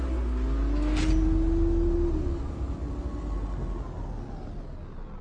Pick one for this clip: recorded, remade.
recorded